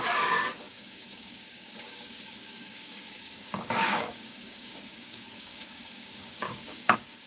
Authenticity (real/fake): fake